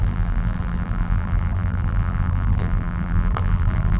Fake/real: fake